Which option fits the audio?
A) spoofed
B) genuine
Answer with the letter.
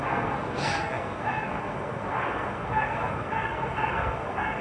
A